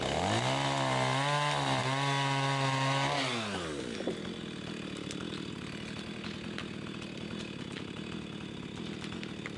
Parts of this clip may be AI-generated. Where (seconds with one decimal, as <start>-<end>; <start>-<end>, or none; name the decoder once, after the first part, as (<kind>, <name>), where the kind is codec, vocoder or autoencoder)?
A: none